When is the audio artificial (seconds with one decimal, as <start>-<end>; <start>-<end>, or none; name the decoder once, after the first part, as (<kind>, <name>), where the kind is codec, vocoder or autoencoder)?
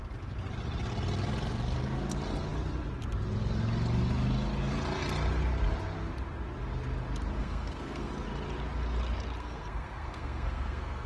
7.4-8.1 (codec, SNAC); 9.4-11.1